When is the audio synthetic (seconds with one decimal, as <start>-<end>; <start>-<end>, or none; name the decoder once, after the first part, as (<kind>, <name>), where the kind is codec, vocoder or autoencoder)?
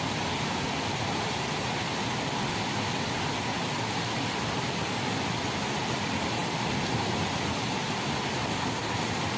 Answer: none